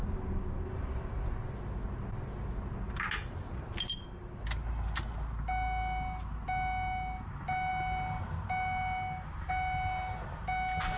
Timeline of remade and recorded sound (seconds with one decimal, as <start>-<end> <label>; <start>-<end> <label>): 0.0-11.0 recorded